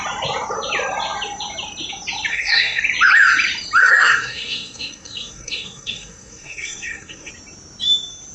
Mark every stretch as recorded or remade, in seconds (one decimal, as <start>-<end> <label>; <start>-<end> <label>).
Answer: 0.0-2.3 recorded; 2.3-2.8 remade; 2.8-3.8 recorded; 3.8-7.3 remade; 7.3-8.3 recorded